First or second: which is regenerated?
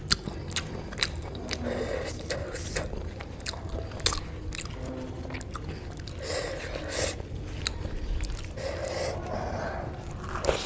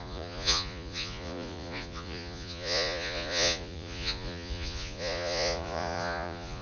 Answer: second